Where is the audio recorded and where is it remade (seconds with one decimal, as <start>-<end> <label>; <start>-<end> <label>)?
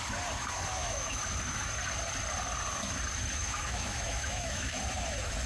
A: 0.0-0.7 recorded; 0.7-1.2 remade; 1.2-3.4 recorded; 3.4-4.8 remade; 4.8-5.5 recorded